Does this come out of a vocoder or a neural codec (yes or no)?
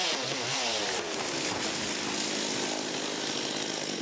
no